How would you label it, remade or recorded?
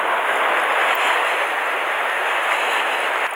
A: recorded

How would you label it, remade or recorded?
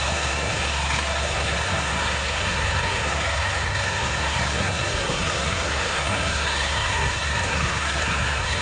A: remade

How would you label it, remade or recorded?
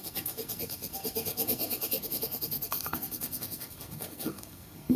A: remade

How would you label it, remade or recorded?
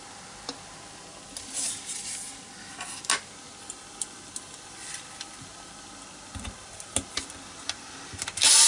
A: recorded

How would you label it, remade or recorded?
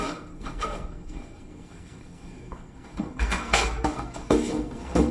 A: remade